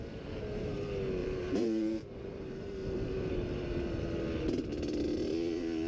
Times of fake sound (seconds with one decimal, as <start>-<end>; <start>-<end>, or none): 1.2-3.7